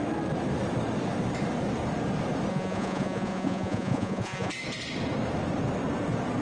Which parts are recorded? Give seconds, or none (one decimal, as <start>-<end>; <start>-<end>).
0.0-2.5; 4.5-6.4